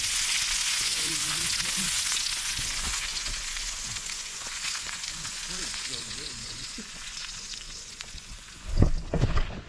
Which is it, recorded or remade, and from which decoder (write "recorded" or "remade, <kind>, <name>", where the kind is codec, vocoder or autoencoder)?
remade, vocoder, Vocos